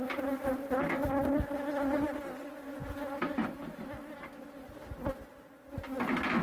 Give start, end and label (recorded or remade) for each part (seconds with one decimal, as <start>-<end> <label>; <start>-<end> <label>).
0.0-6.4 recorded